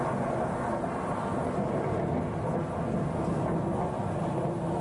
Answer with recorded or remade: recorded